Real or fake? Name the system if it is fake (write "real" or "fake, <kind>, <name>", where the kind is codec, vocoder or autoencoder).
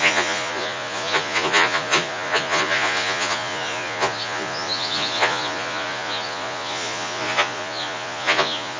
fake, vocoder, Vocos